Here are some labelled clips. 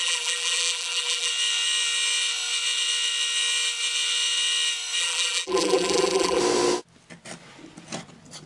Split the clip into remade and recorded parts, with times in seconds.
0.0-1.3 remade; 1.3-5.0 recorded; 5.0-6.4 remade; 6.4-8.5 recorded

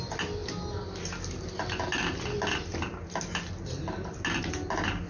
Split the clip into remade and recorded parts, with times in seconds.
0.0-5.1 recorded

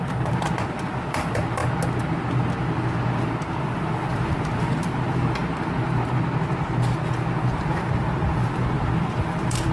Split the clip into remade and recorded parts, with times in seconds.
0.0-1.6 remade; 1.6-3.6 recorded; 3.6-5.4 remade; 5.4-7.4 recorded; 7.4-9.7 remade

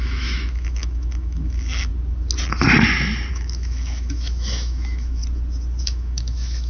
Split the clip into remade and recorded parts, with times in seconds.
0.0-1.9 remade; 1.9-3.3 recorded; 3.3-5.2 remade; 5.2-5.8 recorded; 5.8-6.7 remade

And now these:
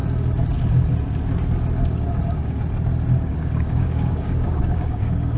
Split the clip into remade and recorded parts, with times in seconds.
0.0-3.2 recorded; 3.2-5.4 remade